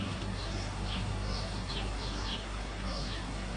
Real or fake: fake